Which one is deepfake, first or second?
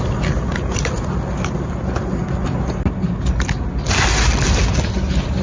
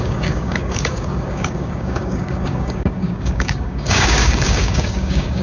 second